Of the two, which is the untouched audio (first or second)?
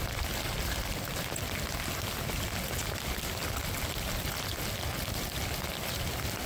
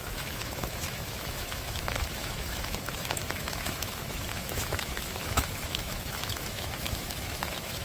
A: first